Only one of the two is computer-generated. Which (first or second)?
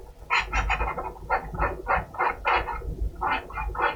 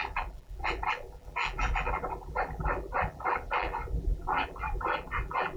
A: second